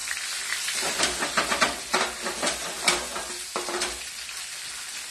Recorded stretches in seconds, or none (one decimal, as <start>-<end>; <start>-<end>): 1.0-3.1